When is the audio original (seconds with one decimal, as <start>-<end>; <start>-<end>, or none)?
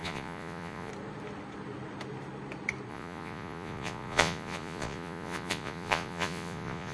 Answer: 0.9-2.9